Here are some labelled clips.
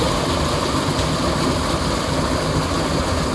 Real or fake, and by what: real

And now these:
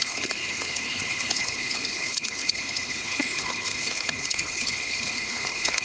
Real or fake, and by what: fake, codec, HILCodec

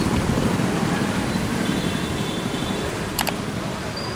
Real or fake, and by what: fake, vocoder, BigVGAN v2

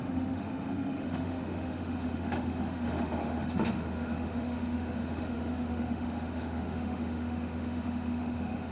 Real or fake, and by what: fake, autoencoder, DAC-VAE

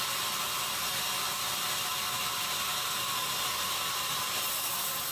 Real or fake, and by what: real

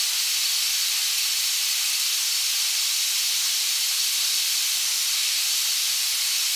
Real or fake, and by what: real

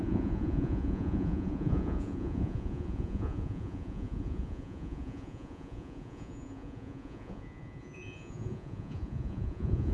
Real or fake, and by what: fake, vocoder, Vocos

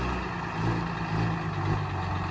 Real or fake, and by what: real